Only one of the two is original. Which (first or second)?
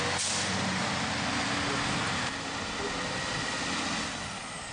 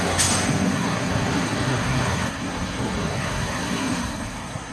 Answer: first